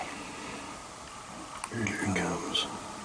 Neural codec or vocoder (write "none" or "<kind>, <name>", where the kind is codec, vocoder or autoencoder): none